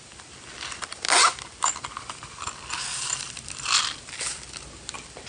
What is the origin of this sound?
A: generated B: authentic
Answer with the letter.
B